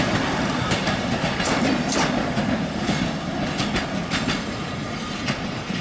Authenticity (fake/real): real